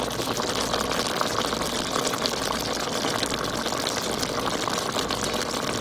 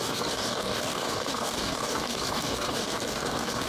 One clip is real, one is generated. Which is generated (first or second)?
second